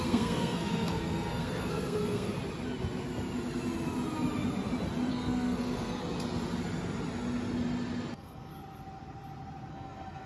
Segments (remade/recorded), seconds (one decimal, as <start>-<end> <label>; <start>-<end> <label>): 0.0-2.3 remade; 2.3-5.1 recorded; 5.1-6.0 remade; 6.0-8.1 recorded; 8.1-8.5 remade; 8.5-9.7 recorded; 9.7-10.3 remade